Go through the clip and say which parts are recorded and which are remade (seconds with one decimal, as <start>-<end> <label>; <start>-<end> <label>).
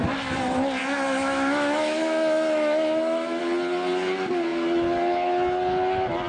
0.0-0.8 recorded; 0.8-3.4 remade; 3.4-6.3 recorded